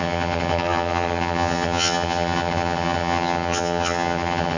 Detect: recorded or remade remade